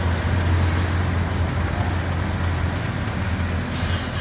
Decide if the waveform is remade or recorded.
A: recorded